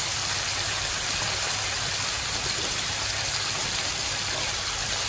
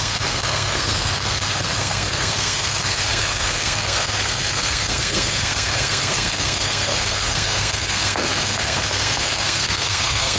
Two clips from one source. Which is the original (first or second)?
first